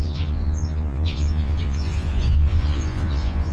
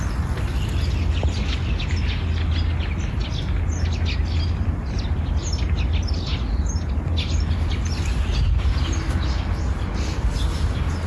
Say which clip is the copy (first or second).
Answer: first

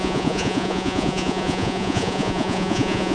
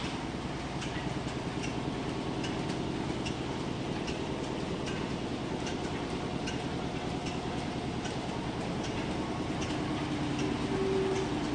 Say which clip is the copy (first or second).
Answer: first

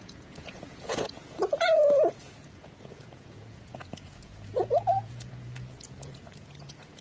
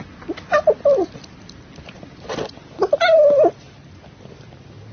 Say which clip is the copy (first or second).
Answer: first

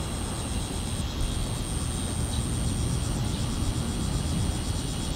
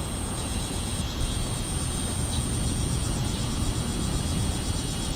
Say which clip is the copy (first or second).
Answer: second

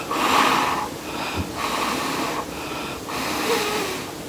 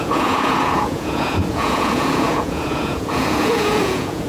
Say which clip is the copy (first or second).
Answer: second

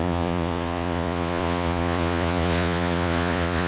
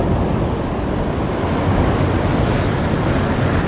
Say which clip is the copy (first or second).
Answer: first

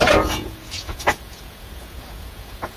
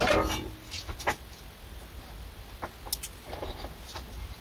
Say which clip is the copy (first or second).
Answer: first